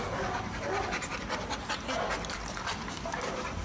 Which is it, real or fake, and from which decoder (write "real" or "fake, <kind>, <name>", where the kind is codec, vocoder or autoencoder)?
real